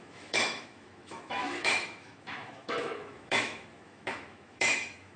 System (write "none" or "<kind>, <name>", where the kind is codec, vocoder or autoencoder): autoencoder, DAC-VAE